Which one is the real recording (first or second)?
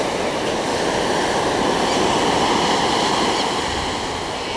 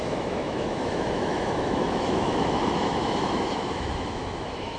first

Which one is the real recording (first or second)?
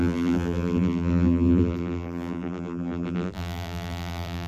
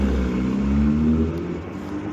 second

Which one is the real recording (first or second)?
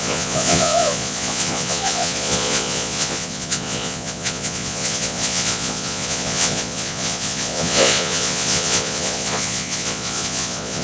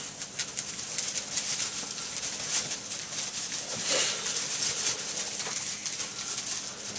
second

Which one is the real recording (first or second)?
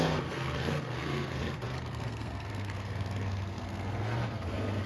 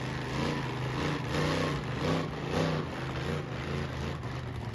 second